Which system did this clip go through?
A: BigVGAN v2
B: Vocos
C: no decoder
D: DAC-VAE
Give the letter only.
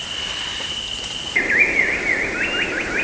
C